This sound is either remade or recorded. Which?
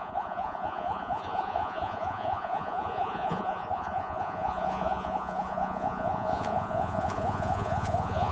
remade